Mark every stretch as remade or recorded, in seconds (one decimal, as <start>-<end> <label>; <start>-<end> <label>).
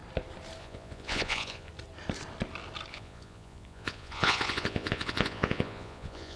0.0-0.6 recorded; 0.6-1.7 remade; 1.7-2.9 recorded; 2.9-6.4 remade